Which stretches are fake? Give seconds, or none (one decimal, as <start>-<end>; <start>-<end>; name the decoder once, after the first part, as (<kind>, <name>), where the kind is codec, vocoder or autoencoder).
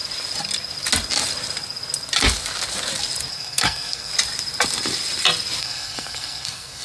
3.3-4.1 (codec, SNAC); 5.6-6.8